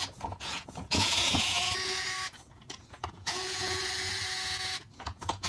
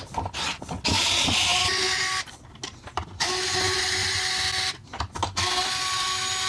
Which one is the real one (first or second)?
second